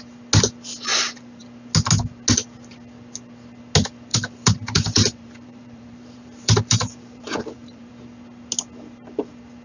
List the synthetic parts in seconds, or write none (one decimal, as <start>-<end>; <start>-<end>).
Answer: 0.9-1.4; 4.1-7.9